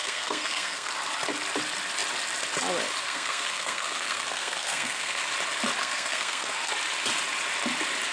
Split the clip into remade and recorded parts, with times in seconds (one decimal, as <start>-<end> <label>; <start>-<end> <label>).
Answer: 0.0-0.9 remade; 0.9-3.0 recorded; 3.0-5.2 remade; 5.2-5.8 recorded; 5.8-6.7 remade; 6.7-8.1 recorded